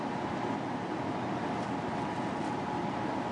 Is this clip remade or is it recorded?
remade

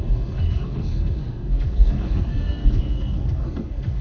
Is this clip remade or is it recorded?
remade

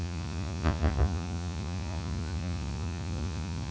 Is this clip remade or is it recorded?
remade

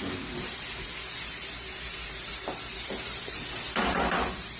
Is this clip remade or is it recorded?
recorded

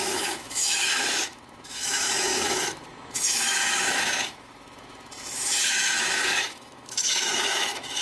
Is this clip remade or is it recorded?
remade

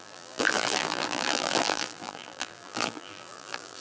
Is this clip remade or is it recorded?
remade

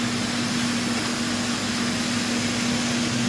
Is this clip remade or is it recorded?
recorded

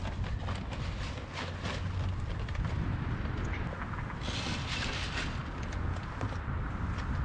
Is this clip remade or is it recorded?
recorded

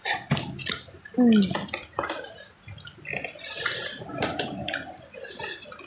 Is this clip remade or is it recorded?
recorded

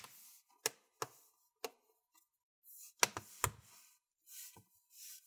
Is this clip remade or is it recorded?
recorded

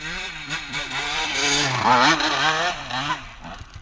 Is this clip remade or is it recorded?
remade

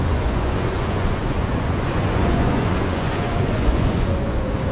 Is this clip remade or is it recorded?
remade